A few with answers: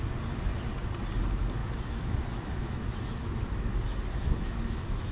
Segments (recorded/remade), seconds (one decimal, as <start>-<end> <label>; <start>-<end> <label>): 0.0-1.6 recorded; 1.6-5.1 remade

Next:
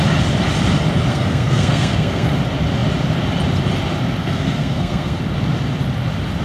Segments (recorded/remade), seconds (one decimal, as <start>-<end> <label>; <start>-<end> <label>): 0.0-1.1 recorded; 1.1-2.3 remade; 2.3-4.2 recorded; 4.2-5.2 remade; 5.2-6.4 recorded

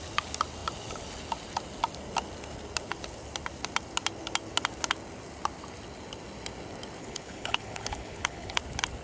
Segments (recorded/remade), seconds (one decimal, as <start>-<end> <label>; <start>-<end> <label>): 0.0-7.0 recorded; 7.0-8.6 remade; 8.6-9.0 recorded

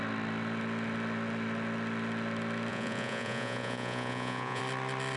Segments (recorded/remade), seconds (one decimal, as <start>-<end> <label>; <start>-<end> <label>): 0.0-2.7 recorded; 2.7-4.6 remade; 4.6-5.2 recorded